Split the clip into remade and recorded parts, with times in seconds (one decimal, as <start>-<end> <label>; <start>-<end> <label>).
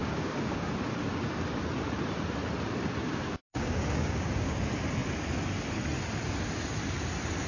0.0-0.7 remade; 0.7-3.0 recorded; 3.0-4.6 remade; 4.6-7.5 recorded